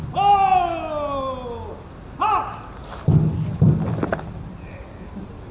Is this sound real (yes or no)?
yes